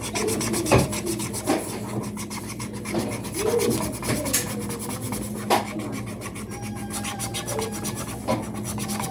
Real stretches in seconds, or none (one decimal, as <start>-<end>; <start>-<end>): 0.0-9.1